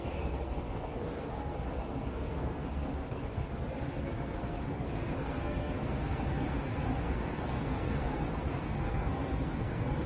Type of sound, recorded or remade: remade